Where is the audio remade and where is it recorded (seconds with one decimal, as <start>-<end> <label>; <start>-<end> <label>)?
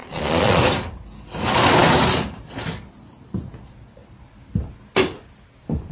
0.0-0.6 remade; 0.6-5.9 recorded